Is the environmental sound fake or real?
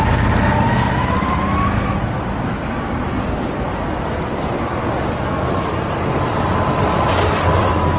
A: real